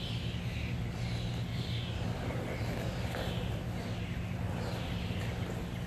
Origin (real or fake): real